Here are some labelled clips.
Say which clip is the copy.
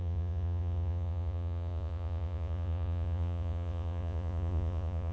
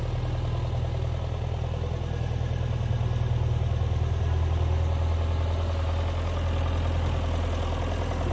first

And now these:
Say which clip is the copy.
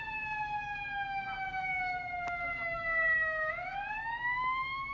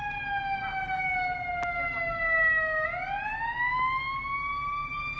first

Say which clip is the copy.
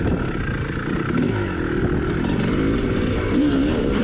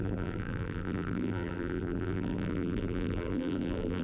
second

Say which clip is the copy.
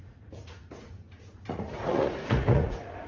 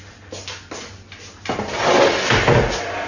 first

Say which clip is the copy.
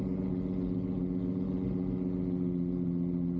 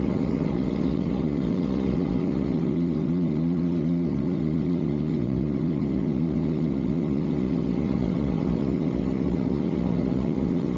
second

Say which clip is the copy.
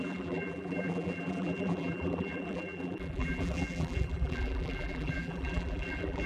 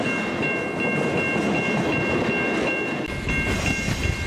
first